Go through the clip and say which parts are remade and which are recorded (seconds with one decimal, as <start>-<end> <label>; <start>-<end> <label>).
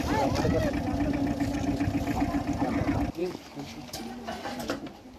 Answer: 0.0-3.2 recorded; 3.2-4.0 remade; 4.0-5.2 recorded